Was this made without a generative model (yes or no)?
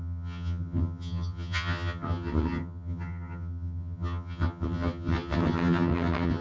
no